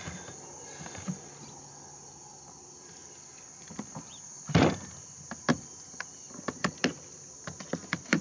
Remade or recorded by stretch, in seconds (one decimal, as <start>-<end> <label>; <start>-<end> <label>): 0.0-8.2 recorded